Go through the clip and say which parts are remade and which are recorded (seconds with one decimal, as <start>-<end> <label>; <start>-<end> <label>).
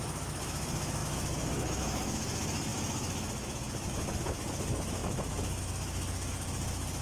0.0-7.0 remade